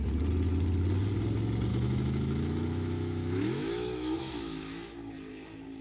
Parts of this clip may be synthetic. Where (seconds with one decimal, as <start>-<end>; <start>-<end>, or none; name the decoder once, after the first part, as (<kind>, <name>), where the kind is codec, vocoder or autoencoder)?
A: 1.7-5.1 (autoencoder, DAC-VAE)